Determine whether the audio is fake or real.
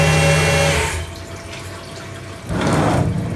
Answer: real